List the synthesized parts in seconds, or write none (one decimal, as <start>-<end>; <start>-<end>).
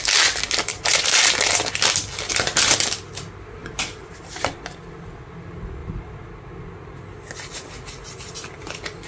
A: 0.7-1.7; 3.6-4.4; 5.8-6.3